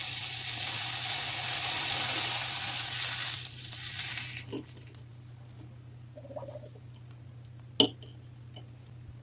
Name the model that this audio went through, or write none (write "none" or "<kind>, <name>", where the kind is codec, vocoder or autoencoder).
none